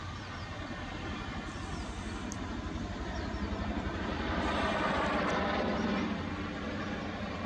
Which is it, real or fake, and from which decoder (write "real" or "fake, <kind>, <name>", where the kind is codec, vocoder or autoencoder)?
fake, vocoder, BigVGAN v2